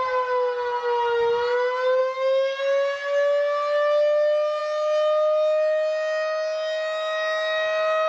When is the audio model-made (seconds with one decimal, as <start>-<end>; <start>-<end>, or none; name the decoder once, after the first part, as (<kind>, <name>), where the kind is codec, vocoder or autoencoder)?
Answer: 2.0-2.6 (autoencoder, DAC-VAE)